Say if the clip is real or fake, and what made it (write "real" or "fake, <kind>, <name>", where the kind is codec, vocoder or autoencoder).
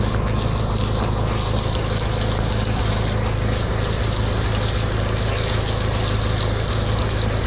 real